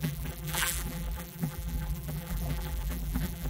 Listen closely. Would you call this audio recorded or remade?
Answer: remade